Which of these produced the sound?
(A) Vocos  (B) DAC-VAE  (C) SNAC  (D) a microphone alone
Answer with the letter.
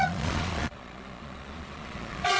A